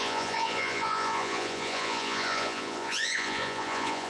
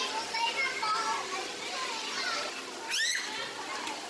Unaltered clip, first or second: second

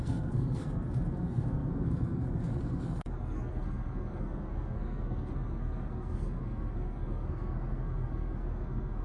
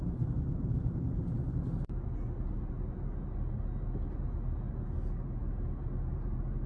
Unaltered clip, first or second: second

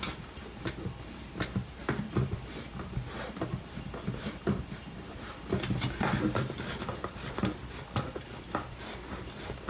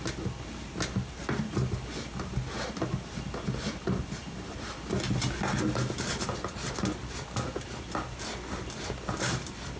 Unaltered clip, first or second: second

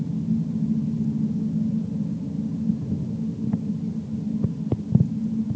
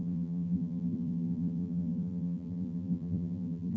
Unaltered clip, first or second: first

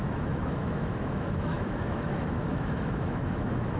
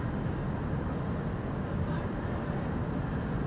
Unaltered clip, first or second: second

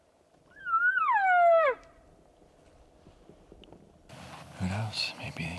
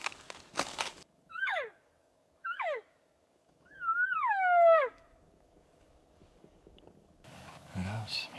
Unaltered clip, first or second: first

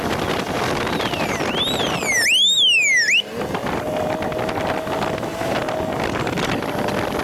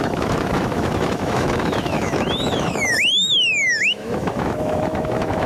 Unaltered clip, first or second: first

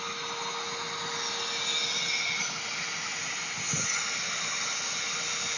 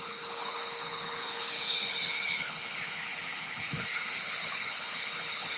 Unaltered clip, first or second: first